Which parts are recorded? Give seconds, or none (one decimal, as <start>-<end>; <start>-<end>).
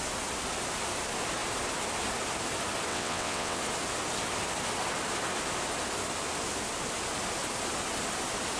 0.0-2.9; 3.6-8.6